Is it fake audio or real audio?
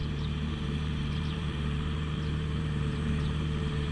fake